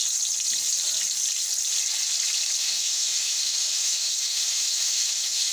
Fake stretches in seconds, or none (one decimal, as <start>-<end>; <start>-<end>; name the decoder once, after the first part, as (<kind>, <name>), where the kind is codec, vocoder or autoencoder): 2.6-5.5 (autoencoder, DAC-VAE)